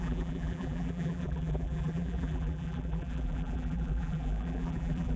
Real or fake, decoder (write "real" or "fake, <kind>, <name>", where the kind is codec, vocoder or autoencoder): fake, vocoder, BigVGAN v2